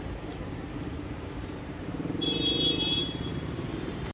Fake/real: fake